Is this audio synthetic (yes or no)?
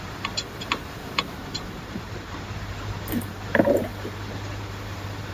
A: yes